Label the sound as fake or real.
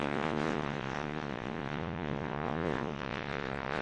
fake